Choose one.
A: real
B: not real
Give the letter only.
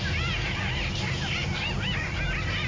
A